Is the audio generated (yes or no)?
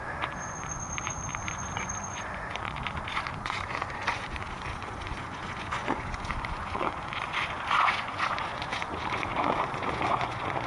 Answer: yes